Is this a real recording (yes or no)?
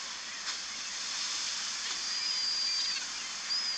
yes